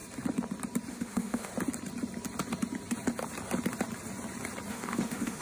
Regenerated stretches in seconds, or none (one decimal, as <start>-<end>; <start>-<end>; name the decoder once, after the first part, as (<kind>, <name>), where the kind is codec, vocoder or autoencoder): 0.9-1.5 (autoencoder, DAC-VAE); 4.7-5.4